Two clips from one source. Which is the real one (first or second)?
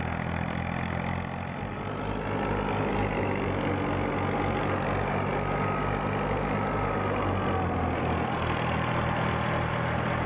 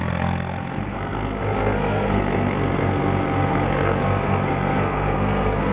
first